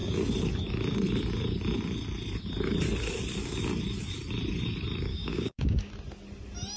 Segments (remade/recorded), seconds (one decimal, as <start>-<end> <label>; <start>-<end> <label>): 0.0-5.1 recorded; 5.1-5.9 remade; 5.9-6.8 recorded